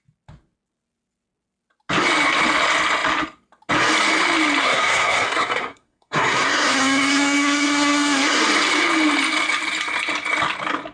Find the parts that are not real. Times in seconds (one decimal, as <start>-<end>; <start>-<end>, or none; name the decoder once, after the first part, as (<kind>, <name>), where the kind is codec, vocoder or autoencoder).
4.6-8.4 (codec, SNAC)